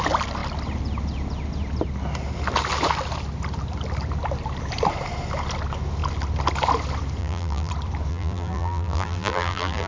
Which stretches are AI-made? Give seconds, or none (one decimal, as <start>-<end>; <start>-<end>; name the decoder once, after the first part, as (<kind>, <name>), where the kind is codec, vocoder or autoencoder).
7.2-7.7 (vocoder, BigVGAN v2); 8.1-9.9